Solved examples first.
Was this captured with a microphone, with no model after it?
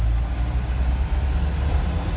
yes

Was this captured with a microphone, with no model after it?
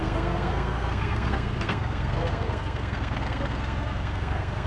no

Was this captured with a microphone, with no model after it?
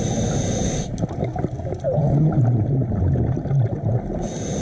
yes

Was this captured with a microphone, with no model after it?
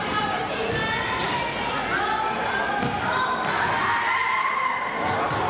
yes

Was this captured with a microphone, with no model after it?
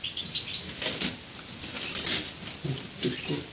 yes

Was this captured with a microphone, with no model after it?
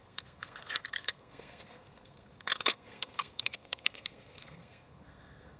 no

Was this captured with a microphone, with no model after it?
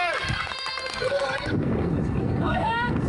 no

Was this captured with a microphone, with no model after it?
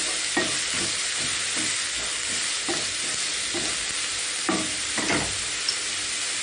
yes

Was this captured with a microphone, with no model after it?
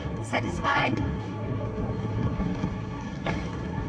no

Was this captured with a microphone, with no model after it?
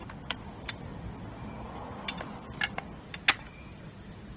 yes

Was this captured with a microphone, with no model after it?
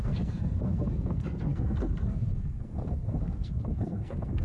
no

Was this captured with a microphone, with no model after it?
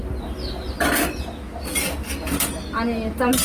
yes